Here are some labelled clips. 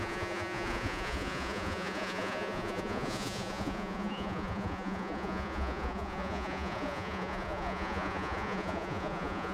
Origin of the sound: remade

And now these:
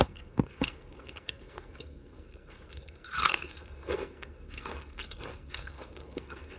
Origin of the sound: remade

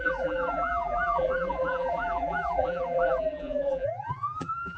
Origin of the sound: remade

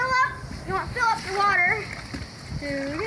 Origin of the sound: recorded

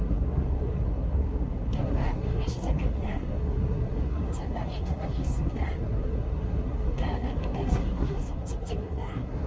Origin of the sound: remade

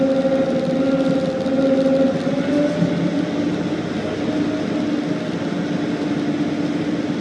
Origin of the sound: recorded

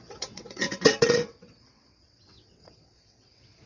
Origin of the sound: remade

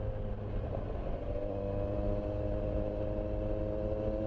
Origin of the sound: recorded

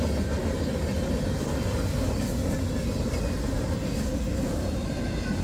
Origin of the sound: recorded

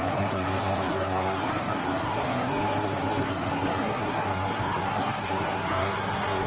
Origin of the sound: remade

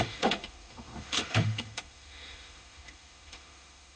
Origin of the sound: remade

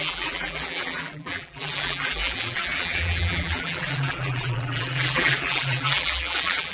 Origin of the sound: remade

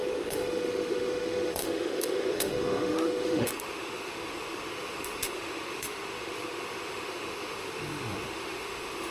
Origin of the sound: remade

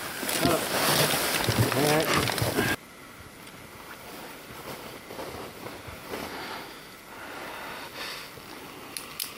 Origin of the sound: recorded